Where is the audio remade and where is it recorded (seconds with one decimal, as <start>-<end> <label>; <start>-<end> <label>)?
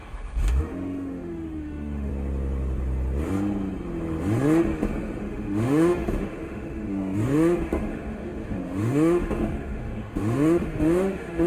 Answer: 0.0-2.1 remade; 2.1-5.2 recorded; 5.2-11.5 remade